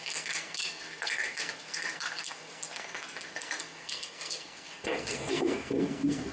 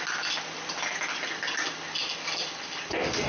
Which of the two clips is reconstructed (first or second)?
first